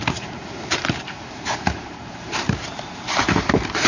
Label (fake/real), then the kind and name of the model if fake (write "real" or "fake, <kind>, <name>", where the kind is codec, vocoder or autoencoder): fake, vocoder, BigVGAN v2